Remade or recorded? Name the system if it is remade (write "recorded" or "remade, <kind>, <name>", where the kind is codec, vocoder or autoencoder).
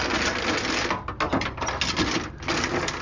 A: recorded